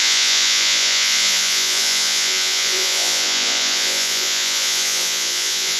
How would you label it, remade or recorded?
remade